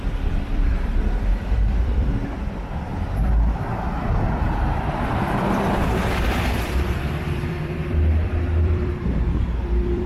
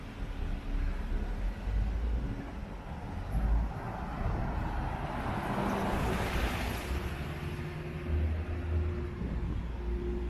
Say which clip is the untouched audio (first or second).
second